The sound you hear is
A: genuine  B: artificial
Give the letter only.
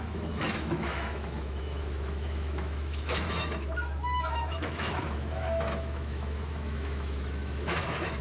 B